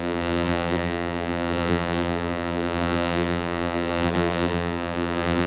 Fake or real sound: fake